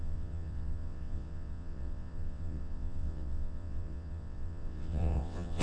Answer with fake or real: fake